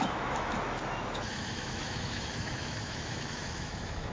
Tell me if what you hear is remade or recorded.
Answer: remade